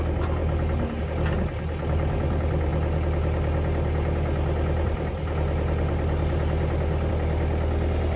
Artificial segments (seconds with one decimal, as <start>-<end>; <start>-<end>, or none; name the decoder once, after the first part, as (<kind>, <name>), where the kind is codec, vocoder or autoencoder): none